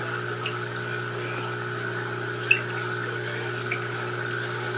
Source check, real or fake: real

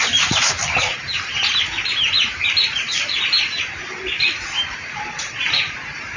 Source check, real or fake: fake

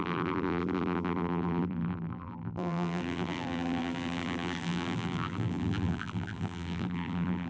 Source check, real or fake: fake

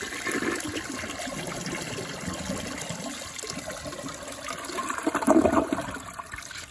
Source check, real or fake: real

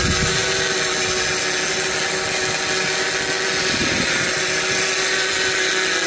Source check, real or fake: real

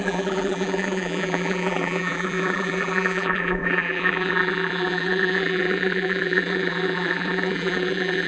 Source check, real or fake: fake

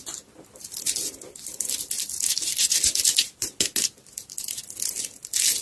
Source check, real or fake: real